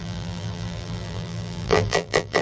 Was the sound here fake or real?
fake